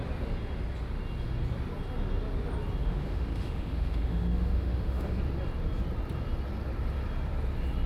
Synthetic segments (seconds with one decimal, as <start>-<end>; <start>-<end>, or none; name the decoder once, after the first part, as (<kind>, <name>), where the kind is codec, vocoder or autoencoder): 2.8-5.2 (autoencoder, DAC-VAE)